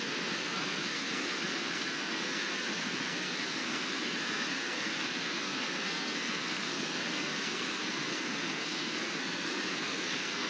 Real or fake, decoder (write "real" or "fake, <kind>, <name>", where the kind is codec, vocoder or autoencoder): fake, codec, SNAC